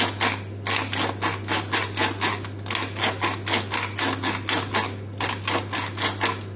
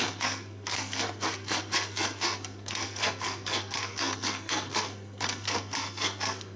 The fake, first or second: second